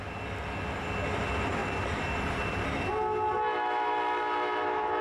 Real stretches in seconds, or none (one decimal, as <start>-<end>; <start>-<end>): 0.0-5.0